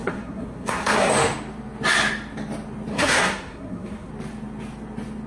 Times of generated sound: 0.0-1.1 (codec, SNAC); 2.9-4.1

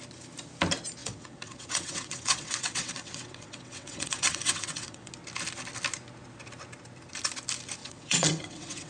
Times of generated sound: 1.0-5.1 (vocoder, WaveNeXt); 7.8-8.9

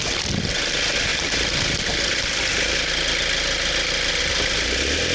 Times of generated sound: none